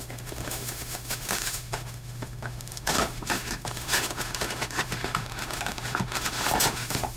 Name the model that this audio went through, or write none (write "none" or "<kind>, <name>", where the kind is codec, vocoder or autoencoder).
autoencoder, DAC-VAE